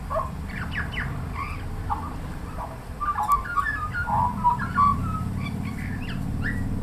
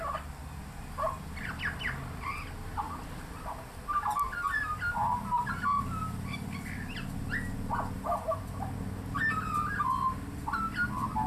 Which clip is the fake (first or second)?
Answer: first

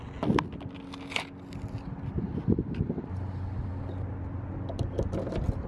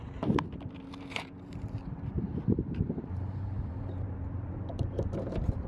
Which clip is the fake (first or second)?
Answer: second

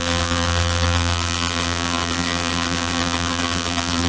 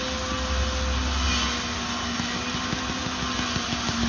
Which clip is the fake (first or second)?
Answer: first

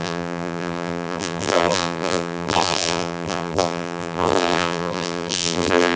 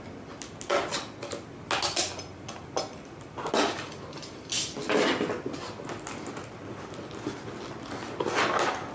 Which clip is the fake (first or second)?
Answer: first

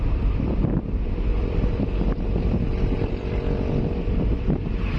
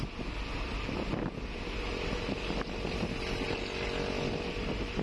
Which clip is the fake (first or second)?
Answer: first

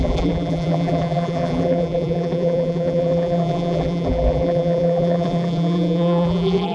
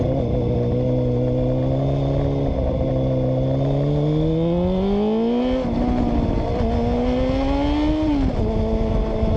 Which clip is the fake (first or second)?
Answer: first